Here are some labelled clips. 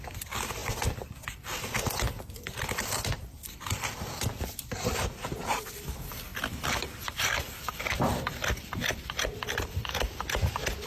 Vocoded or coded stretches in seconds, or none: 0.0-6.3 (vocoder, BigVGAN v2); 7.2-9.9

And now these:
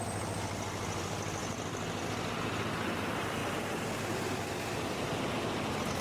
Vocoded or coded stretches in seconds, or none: none

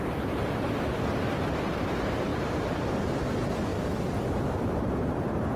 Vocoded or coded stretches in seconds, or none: 0.0-5.6 (vocoder, BigVGAN v2)

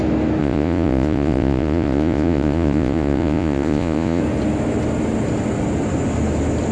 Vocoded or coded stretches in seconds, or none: 0.4-4.2 (vocoder, Vocos)

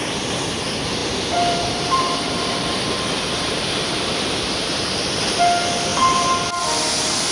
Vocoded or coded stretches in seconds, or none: 1.0-5.4 (vocoder, BigVGAN v2)

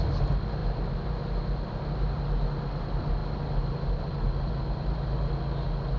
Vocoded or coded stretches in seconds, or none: none

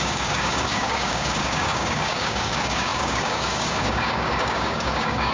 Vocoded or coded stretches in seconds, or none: 0.0-5.3 (codec, DAC)